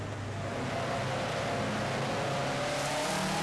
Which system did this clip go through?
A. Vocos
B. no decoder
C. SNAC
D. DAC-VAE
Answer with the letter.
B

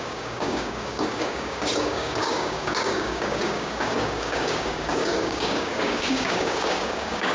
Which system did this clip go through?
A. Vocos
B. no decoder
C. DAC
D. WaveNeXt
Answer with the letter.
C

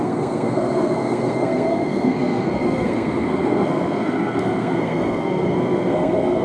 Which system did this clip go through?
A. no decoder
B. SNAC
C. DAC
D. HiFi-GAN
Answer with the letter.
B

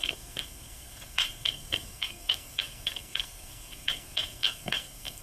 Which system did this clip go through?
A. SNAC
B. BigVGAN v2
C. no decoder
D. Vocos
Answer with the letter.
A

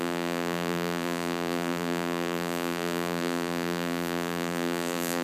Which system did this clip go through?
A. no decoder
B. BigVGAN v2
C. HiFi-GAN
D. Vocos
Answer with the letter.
B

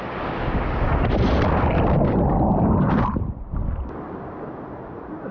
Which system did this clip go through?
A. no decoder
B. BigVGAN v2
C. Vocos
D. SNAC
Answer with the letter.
A